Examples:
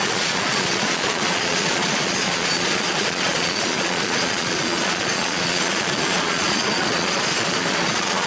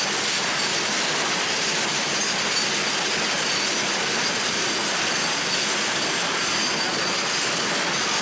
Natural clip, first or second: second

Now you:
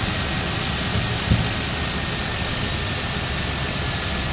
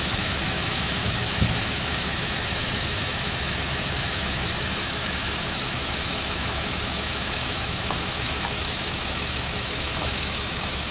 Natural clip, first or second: first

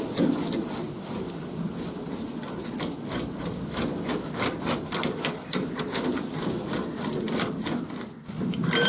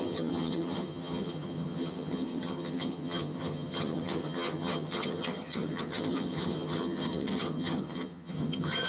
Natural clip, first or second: first